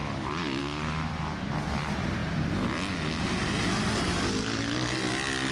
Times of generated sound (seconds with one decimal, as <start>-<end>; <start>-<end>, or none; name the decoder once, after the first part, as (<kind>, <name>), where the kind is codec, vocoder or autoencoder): none